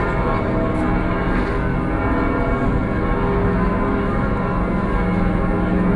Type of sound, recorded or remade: recorded